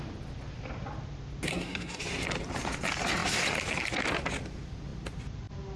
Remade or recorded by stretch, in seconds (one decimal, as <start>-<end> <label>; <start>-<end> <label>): 0.0-1.5 recorded; 1.5-2.0 remade; 2.0-5.8 recorded